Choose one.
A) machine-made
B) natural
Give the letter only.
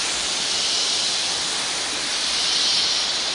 B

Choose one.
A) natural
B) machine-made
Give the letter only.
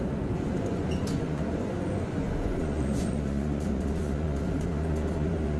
B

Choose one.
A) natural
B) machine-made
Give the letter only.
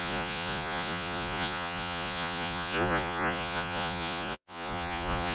B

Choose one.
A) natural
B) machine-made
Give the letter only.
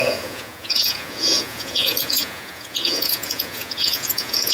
B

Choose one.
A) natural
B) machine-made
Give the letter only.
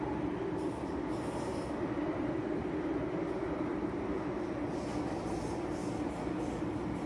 A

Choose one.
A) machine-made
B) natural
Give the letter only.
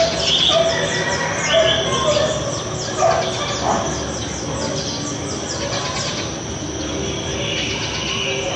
B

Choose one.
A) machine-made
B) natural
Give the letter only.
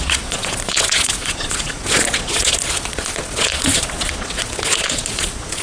A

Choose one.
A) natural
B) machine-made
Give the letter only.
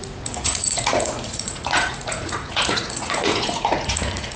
B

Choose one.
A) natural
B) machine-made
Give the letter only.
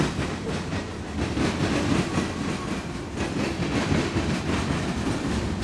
A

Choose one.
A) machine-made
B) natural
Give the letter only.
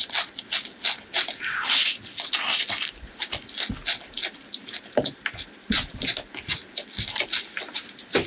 B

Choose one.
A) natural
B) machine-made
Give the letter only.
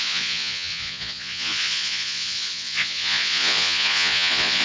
B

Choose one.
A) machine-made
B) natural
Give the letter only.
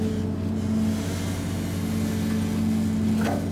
B